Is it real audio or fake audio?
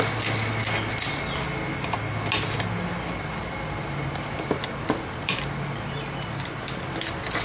real